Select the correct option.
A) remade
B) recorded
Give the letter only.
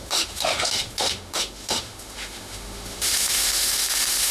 A